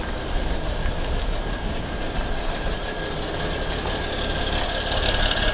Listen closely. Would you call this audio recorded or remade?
recorded